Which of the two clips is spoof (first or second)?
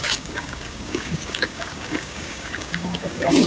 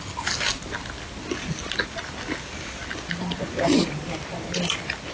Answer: first